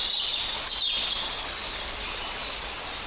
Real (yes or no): yes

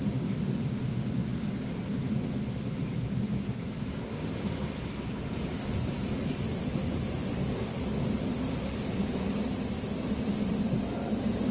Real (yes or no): yes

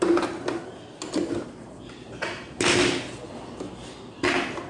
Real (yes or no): yes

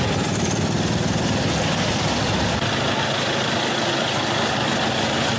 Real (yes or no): yes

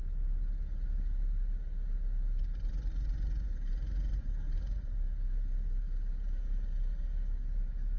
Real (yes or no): yes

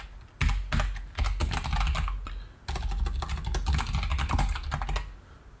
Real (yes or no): yes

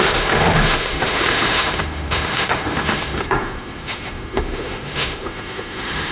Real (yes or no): no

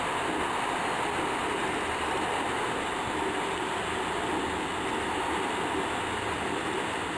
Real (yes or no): yes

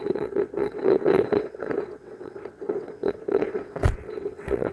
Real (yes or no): no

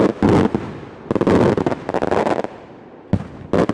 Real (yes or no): yes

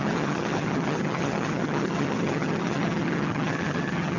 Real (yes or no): no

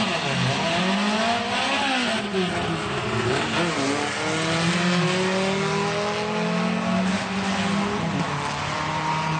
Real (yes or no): yes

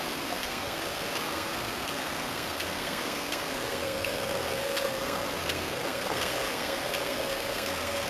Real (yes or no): no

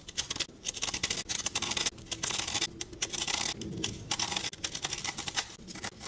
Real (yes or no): yes